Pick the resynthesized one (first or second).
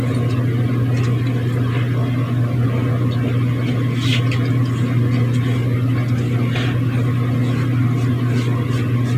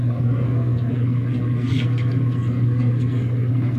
second